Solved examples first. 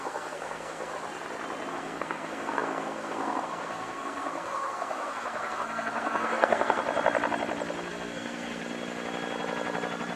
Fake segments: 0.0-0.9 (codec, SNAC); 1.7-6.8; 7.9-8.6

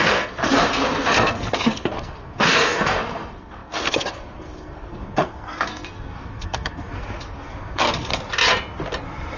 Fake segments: 0.0-8.1 (codec, SNAC)